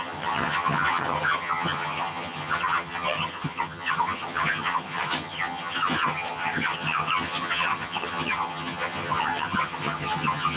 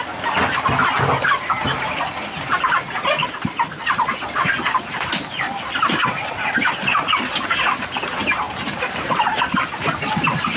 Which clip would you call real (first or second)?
second